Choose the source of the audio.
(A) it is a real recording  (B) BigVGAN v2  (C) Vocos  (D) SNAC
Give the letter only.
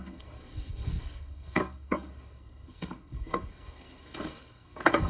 D